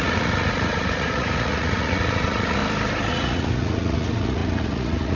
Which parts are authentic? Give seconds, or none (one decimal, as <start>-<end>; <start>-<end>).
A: 2.6-3.1